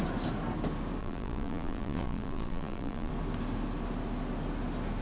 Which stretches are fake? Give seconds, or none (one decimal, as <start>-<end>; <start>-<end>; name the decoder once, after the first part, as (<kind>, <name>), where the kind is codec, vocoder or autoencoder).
1.0-3.1 (vocoder, Vocos)